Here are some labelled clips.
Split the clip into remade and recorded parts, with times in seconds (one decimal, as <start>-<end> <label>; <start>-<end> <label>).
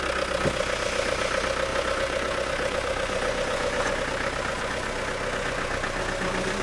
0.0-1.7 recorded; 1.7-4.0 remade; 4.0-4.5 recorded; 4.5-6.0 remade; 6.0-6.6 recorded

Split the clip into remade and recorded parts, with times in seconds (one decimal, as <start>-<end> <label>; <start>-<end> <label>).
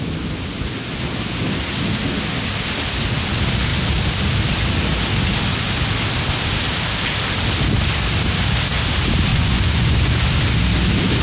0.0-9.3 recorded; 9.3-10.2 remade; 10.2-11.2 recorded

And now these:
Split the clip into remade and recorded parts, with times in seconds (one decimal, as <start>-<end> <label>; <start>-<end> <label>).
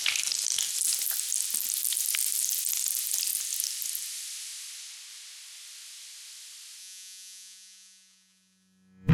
0.0-6.8 recorded; 6.8-9.1 remade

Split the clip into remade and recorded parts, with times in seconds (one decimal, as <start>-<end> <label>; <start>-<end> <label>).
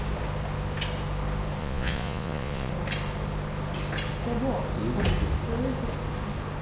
0.0-1.6 recorded; 1.6-2.7 remade; 2.7-6.6 recorded